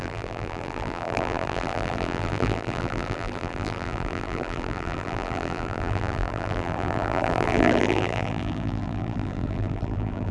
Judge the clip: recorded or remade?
remade